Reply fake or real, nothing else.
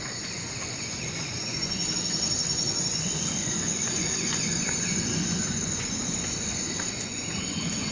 fake